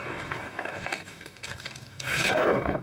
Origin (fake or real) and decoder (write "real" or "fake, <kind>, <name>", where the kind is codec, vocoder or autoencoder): fake, codec, DAC